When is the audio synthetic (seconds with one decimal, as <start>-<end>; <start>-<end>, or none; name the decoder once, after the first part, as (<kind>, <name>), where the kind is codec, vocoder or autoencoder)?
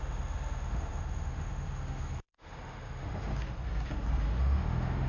0.0-3.3 (autoencoder, DAC-VAE); 4.4-5.1